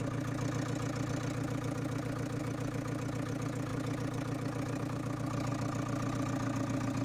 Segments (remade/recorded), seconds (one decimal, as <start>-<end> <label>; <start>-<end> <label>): 0.0-7.0 recorded